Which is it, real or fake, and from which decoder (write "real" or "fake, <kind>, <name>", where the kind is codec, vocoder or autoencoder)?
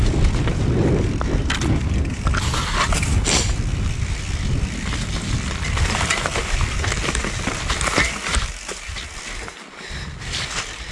real